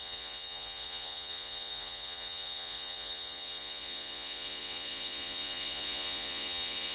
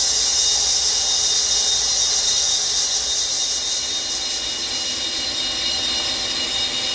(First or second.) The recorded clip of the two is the second